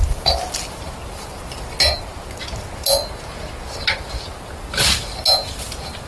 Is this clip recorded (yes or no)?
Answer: yes